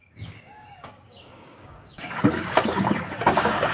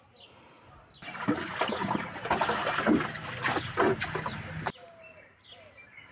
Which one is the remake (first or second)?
first